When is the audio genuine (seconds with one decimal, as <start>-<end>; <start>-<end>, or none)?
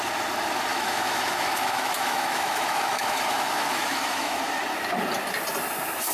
0.0-0.7; 4.4-6.1